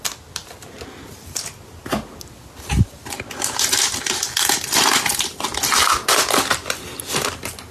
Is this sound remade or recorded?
recorded